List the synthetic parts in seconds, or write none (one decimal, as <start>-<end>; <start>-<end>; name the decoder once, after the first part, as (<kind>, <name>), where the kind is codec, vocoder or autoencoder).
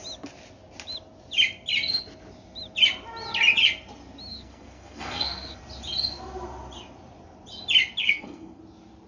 4.3-5.6 (codec, SNAC); 8.0-8.6